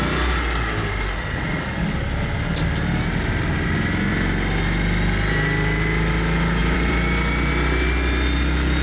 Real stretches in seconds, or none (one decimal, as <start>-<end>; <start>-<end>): 0.0-6.6; 7.5-8.8